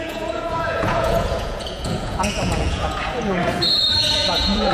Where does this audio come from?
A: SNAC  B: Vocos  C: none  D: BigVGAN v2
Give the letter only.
B